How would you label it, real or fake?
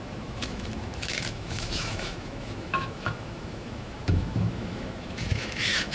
fake